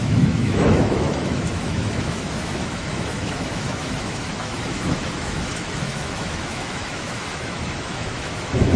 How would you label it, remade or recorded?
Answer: remade